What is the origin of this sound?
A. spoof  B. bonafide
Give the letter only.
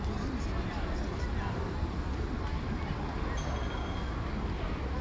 B